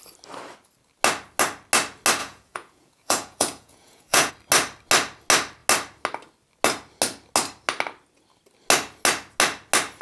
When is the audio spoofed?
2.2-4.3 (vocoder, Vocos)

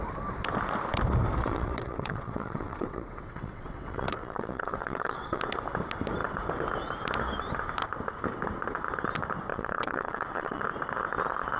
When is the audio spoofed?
1.4-5.4 (vocoder, WaveNeXt); 9.5-10.6

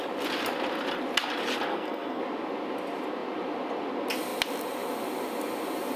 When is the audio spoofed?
1.7-2.2 (codec, SNAC)

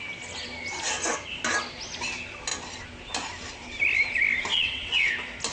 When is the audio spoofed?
4.5-5.1 (vocoder, WaveNeXt)

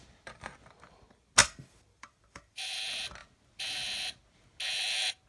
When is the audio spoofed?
1.4-2.8 (vocoder, BigVGAN v2)

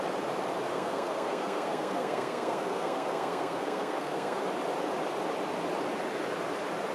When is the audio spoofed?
0.7-4.4 (codec, SNAC)

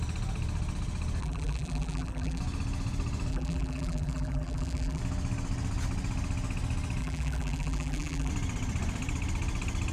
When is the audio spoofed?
1.2-2.4 (vocoder, BigVGAN v2); 3.3-5.0; 7.0-8.3